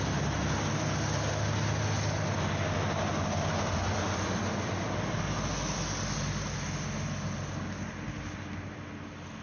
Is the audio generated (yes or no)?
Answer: no